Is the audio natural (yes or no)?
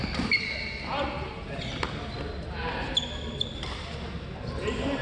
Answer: yes